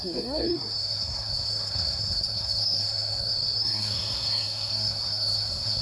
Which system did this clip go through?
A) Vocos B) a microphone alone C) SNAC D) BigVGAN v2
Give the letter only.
C